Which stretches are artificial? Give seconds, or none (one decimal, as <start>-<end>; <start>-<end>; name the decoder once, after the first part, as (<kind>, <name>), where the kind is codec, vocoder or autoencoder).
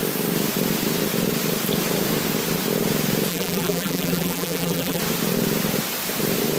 3.3-5.0 (vocoder, BigVGAN v2)